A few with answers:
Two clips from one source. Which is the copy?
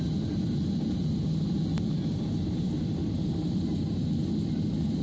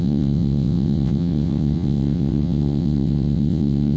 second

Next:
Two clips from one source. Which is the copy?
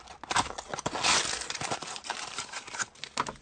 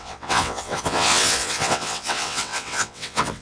second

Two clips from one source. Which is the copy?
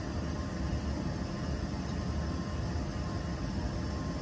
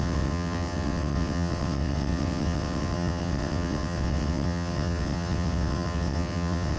second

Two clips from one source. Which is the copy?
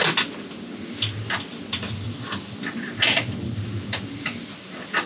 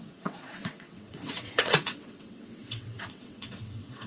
second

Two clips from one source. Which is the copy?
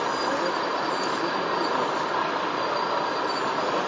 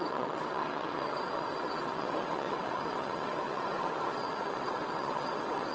second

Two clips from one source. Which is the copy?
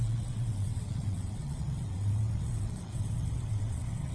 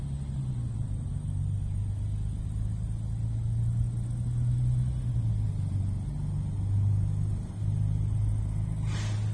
first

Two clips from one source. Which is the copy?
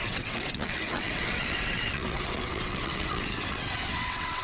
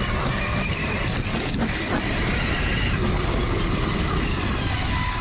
first